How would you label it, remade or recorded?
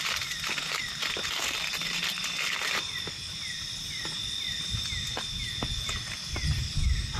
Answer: recorded